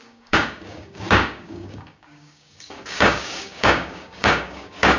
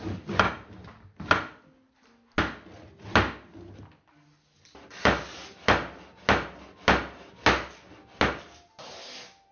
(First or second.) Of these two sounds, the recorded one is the second